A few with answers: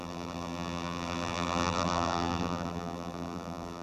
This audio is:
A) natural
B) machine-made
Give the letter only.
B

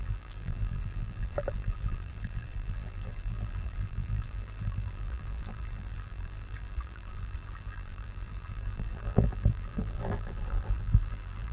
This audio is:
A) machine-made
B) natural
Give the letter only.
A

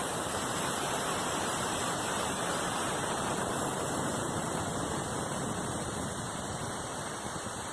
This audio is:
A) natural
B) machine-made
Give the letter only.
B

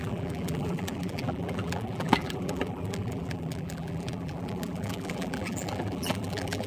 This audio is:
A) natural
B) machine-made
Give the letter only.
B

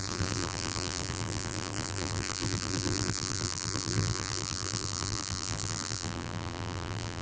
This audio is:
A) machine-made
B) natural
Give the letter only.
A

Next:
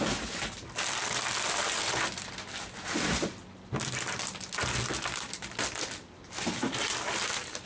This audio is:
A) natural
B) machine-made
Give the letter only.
A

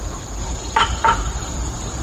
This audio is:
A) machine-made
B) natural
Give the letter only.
A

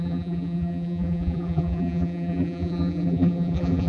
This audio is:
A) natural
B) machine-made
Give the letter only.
B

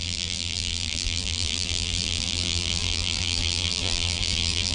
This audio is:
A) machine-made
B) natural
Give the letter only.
A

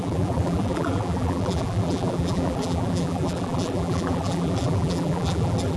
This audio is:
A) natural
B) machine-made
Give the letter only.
B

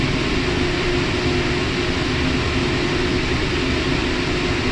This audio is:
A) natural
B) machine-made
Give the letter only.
A